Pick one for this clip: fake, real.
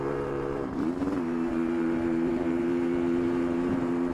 fake